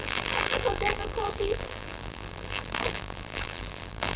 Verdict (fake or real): fake